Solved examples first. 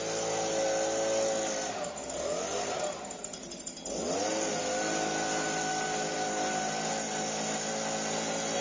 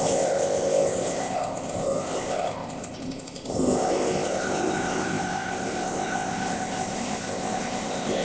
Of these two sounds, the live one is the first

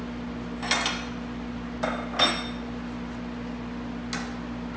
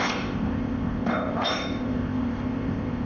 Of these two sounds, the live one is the first